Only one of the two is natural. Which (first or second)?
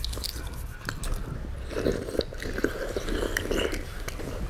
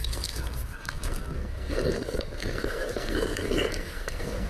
first